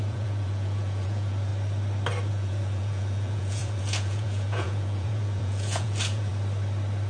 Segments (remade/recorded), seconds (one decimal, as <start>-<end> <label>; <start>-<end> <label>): 0.0-1.5 remade; 1.5-2.3 recorded; 2.3-6.3 remade; 6.3-7.1 recorded